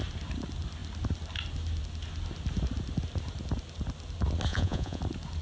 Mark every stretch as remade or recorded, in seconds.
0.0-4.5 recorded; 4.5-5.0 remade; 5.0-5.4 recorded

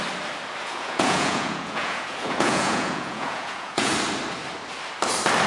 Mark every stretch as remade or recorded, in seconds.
0.0-0.6 recorded; 0.6-3.9 remade; 3.9-5.5 recorded

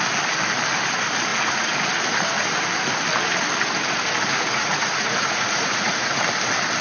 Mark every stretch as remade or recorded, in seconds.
0.0-1.3 recorded; 1.3-1.9 remade; 1.9-4.3 recorded; 4.3-6.2 remade; 6.2-6.8 recorded

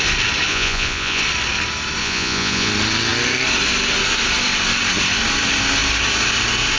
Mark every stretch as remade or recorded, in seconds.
0.0-0.5 recorded; 0.5-1.2 remade; 1.2-2.0 recorded; 2.0-2.7 remade; 2.7-6.8 recorded